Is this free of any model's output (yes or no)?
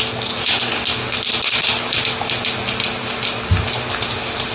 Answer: yes